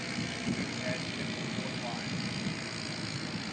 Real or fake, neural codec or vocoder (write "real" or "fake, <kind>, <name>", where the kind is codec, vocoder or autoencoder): real